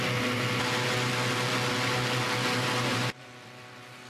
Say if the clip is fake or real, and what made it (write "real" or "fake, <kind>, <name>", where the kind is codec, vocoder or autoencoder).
real